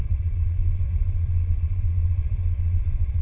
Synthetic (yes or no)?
yes